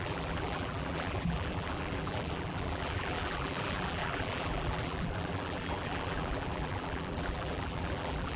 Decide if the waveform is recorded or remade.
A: remade